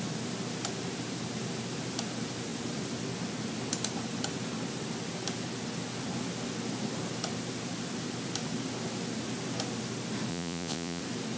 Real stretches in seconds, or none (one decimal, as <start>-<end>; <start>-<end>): 0.0-10.3; 11.0-11.4